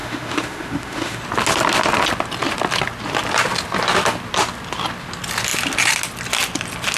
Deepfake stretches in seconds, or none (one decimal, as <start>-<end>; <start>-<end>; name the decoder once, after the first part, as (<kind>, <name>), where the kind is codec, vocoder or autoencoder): 0.0-1.2 (autoencoder, DAC-VAE)